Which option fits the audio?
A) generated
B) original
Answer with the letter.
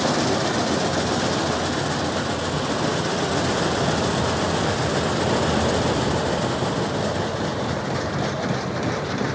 B